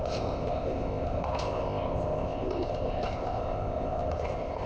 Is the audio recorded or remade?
remade